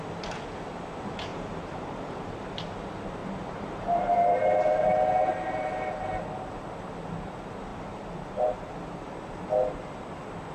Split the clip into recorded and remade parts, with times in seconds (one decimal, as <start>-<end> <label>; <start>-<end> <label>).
0.0-1.3 recorded; 1.3-2.6 remade; 2.6-3.2 recorded; 3.2-6.2 remade; 6.2-7.7 recorded; 7.7-9.2 remade; 9.2-10.5 recorded